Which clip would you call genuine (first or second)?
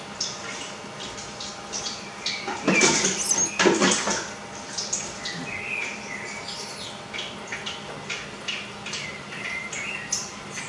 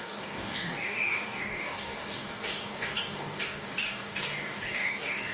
first